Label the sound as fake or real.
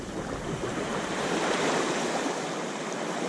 fake